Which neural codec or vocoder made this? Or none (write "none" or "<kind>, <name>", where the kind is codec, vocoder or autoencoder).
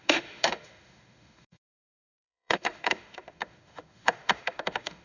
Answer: autoencoder, DAC-VAE